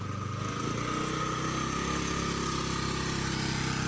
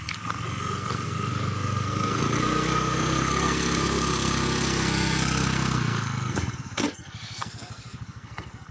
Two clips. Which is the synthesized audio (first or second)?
second